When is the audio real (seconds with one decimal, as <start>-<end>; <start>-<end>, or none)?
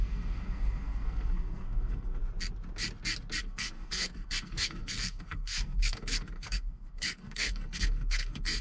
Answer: 2.2-3.4